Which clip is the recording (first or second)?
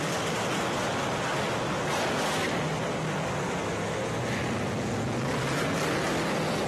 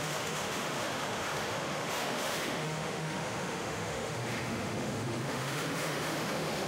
first